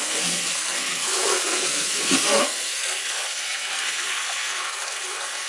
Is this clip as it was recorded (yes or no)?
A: no